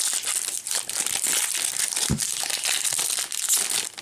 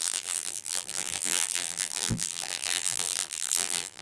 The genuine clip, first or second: first